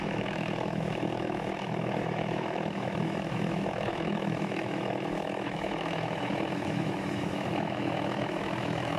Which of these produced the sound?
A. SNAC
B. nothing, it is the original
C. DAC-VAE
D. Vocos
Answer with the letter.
C